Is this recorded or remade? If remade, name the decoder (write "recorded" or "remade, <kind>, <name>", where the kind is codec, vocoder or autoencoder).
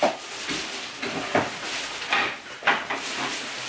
recorded